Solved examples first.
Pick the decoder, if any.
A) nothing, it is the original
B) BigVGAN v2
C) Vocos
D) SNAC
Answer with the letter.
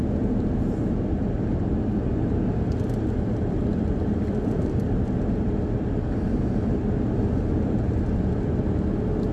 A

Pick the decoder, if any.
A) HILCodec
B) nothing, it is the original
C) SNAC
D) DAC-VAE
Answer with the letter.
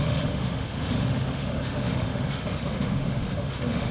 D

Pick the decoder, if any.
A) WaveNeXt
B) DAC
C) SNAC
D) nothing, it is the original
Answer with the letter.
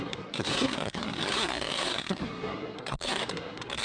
C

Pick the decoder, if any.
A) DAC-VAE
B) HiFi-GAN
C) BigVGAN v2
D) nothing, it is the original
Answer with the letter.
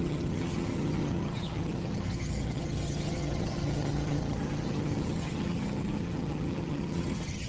B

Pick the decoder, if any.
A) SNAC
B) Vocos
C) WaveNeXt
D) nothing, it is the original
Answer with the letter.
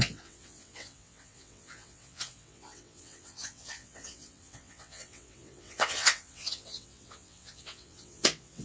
C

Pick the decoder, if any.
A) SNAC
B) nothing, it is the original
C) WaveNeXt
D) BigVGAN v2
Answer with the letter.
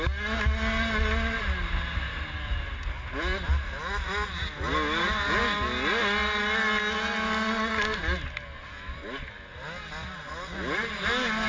B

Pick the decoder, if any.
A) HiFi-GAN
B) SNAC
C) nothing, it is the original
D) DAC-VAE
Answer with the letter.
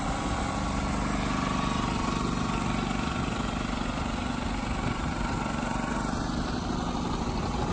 C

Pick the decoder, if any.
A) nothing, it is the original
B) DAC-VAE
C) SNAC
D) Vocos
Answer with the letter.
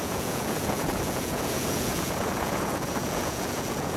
D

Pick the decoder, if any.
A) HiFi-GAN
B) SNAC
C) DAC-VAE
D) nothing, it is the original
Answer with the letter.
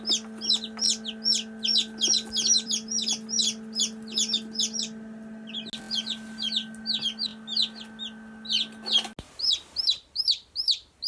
D